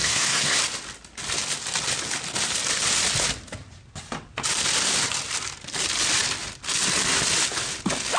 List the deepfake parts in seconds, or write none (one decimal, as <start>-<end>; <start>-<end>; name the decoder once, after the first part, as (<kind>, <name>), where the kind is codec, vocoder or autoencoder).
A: 0.0-0.6 (codec, SNAC)